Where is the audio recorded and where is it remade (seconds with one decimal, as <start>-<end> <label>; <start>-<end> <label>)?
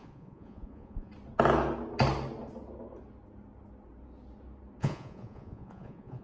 0.0-1.1 remade; 1.1-4.8 recorded; 4.8-6.2 remade